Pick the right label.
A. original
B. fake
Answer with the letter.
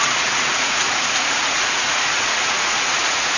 B